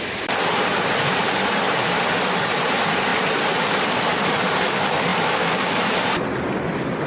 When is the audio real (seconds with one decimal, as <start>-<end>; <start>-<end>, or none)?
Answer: 0.0-7.1